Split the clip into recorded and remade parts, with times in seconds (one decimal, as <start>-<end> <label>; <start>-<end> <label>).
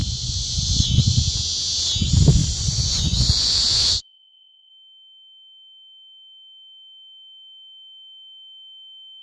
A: 0.0-1.2 remade; 1.2-2.4 recorded; 2.4-4.7 remade; 4.7-9.2 recorded